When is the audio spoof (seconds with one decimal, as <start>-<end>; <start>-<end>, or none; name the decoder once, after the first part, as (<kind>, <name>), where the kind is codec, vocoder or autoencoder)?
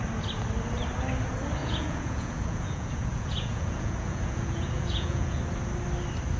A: 1.6-5.4 (vocoder, Vocos)